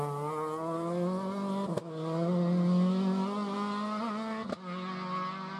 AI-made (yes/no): no